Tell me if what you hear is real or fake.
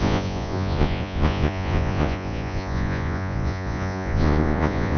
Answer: fake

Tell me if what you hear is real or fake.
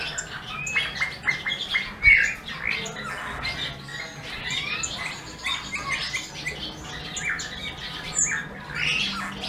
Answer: real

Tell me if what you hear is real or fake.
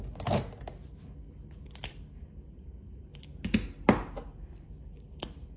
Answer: real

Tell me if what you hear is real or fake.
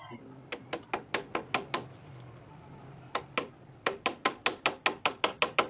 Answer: real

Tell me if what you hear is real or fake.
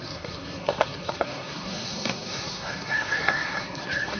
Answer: fake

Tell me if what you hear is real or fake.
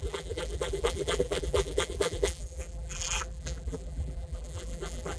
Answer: fake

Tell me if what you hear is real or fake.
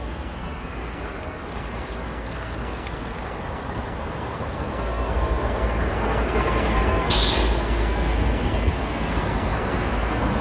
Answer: fake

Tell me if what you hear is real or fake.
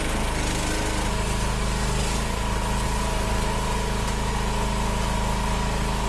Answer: real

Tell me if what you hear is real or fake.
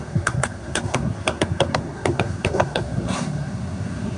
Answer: fake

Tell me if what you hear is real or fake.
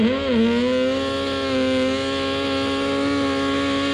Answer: real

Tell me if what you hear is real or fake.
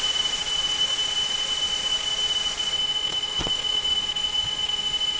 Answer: fake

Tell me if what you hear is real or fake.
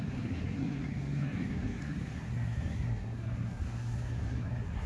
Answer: fake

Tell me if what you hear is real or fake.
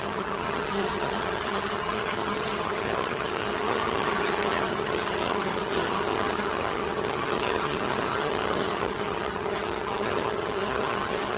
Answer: fake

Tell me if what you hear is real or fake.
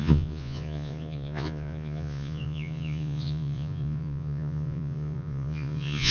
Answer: fake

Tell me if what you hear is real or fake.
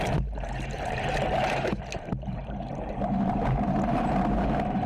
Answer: fake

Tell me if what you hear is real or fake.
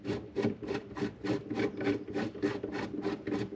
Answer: real